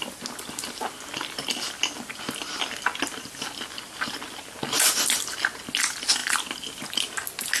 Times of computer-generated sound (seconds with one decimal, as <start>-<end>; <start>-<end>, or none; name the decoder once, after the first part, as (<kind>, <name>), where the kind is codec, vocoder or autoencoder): none